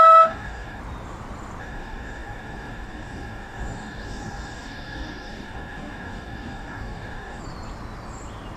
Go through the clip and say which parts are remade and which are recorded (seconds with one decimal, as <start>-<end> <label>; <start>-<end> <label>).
0.0-0.8 remade; 0.8-1.6 recorded; 1.6-7.4 remade; 7.4-8.6 recorded